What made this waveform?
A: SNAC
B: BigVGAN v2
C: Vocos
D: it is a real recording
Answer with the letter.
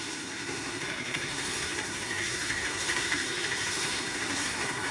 A